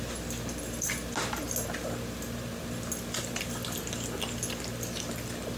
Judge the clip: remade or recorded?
recorded